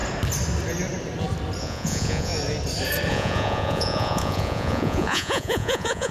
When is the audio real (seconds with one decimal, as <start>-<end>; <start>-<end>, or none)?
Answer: 0.0-1.6; 2.3-3.1